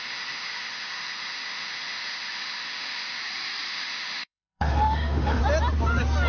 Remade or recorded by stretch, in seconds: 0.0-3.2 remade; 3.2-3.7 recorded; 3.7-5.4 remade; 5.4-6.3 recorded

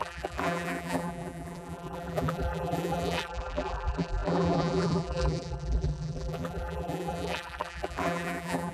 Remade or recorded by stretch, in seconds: 0.0-8.7 remade